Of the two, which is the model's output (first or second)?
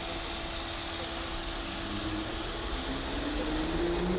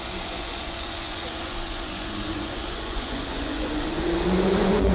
second